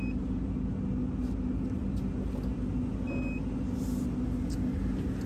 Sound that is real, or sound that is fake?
real